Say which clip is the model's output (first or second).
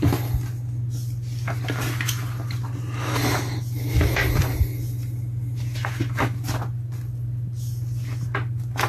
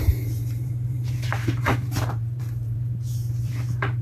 second